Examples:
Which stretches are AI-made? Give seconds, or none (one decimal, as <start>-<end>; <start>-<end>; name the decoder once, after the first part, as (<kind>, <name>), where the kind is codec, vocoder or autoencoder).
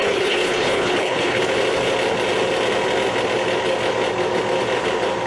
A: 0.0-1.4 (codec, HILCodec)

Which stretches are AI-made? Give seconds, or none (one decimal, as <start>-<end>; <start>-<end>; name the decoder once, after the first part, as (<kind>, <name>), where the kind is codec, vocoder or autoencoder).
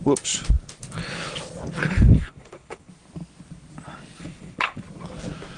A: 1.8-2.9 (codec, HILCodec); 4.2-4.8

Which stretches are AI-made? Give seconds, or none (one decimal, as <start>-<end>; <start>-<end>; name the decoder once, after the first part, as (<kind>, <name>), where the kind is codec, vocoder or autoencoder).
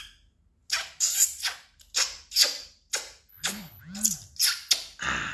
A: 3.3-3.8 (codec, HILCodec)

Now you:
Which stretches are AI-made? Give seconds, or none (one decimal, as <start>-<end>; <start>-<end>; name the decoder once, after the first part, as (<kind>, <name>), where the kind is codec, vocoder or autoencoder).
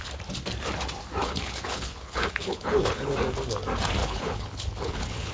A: 1.2-3.1 (codec, HILCodec); 4.0-5.3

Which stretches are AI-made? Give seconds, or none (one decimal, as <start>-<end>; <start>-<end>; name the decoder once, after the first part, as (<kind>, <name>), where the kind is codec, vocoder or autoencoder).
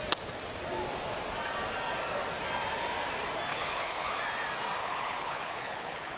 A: 3.5-4.2 (codec, HILCodec); 4.8-6.2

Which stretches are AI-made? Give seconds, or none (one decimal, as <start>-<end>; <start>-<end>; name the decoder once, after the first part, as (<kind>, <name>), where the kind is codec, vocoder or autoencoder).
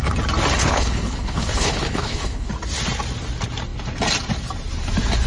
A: 0.6-2.5 (codec, HILCodec)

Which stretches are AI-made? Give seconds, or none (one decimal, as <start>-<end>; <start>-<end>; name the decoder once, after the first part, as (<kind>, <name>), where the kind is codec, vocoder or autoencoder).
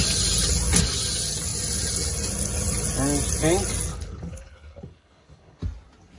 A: 3.9-5.6 (codec, HILCodec)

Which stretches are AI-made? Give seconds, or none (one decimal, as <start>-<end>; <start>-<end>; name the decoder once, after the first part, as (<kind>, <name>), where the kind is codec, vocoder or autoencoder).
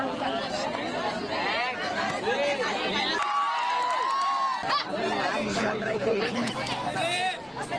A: 5.5-6.5 (codec, HILCodec)